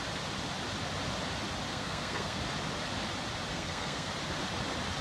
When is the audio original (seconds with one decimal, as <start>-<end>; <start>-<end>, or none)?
0.0-1.7; 2.4-3.5; 4.1-5.0